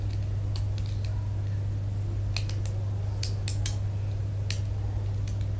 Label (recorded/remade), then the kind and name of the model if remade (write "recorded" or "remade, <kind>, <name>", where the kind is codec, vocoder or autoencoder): recorded